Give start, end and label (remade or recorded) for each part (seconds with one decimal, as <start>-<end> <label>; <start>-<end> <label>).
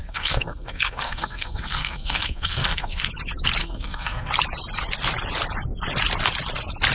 0.0-3.1 remade; 3.1-3.6 recorded; 3.6-4.3 remade; 4.3-6.9 recorded